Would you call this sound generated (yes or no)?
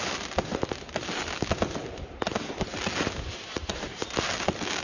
no